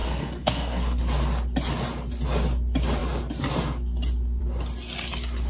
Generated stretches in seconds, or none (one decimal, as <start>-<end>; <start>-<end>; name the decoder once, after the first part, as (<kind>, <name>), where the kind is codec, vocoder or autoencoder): 0.0-1.0 (codec, SNAC)